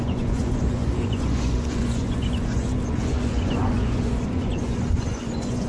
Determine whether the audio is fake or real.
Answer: fake